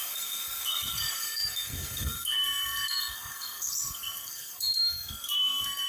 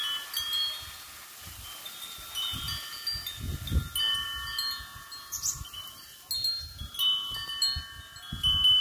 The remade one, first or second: first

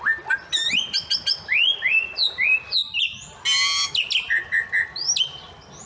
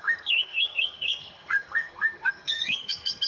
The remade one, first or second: second